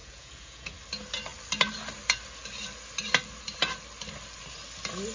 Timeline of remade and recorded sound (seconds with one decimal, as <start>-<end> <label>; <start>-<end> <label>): 0.0-0.7 remade; 0.7-5.1 recorded